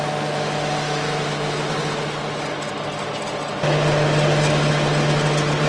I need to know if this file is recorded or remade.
recorded